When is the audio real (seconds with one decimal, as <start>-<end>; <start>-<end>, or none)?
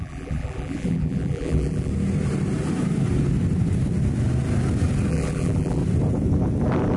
1.9-5.1; 5.8-7.0